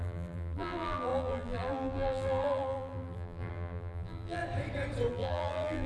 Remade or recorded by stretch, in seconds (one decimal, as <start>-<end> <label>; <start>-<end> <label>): 0.0-4.4 remade; 4.4-5.1 recorded; 5.1-5.9 remade